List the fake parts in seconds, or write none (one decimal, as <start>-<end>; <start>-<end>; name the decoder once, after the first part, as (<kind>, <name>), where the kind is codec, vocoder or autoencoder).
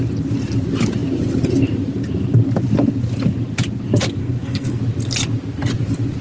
4.2-4.8 (codec, SNAC)